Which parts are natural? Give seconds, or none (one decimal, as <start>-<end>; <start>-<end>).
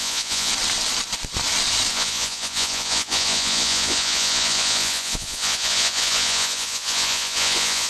0.5-1.9